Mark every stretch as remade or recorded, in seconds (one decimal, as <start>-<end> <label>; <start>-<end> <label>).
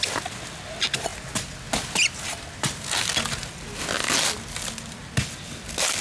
0.0-6.0 recorded